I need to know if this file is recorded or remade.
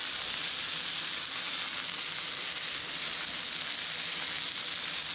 recorded